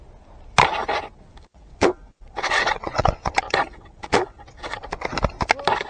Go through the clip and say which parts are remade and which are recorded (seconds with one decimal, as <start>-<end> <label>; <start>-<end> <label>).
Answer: 0.0-1.5 recorded; 1.5-4.9 remade; 4.9-5.9 recorded